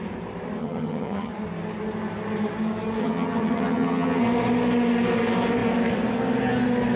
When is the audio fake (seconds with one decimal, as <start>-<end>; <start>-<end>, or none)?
0.6-1.3; 3.0-4.2